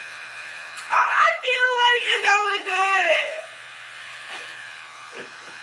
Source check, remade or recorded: remade